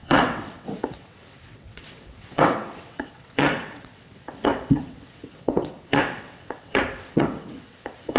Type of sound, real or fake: fake